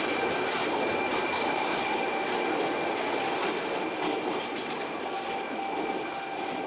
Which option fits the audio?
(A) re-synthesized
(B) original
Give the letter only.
B